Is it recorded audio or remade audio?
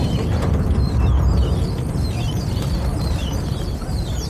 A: remade